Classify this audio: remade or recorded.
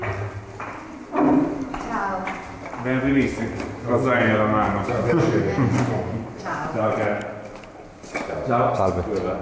recorded